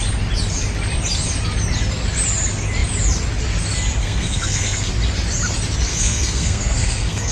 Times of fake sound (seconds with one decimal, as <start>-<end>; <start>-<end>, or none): 4.0-4.9; 5.9-7.3